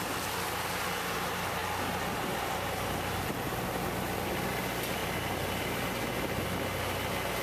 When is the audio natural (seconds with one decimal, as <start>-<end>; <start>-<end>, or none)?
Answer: 0.0-7.4